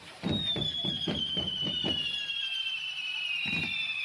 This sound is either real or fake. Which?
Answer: fake